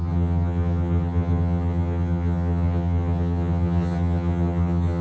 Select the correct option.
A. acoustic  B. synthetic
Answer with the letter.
B